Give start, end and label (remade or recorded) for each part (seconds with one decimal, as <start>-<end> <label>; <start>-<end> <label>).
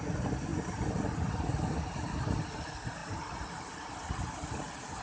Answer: 0.0-5.0 recorded